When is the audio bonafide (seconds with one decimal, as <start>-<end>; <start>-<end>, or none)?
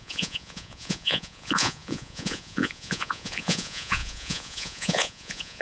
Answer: none